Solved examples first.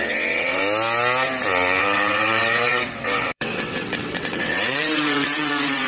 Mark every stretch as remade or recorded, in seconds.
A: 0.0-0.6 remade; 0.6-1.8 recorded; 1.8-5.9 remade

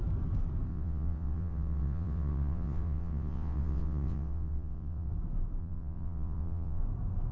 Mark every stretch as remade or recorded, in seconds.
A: 0.0-0.7 recorded; 0.7-5.1 remade; 5.1-5.6 recorded; 5.6-6.8 remade; 6.8-7.3 recorded